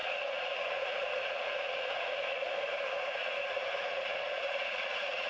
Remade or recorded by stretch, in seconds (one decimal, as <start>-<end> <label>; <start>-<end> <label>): 0.0-2.6 remade; 2.6-3.2 recorded; 3.2-5.3 remade